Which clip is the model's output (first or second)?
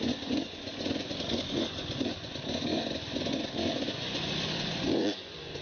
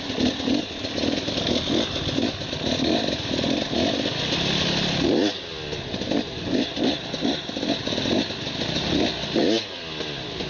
first